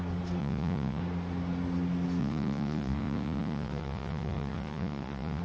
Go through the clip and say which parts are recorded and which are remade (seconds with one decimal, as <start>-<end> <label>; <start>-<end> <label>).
0.0-0.4 recorded; 0.4-1.0 remade; 1.0-2.2 recorded; 2.2-5.4 remade